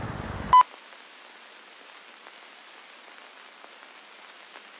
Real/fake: real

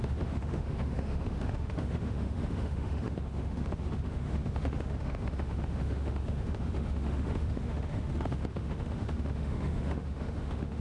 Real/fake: fake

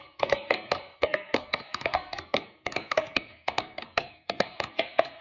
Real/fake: fake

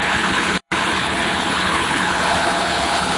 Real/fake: fake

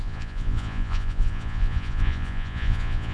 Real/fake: fake